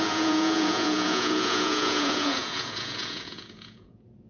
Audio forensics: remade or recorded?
remade